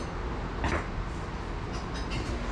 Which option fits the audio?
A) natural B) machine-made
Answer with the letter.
A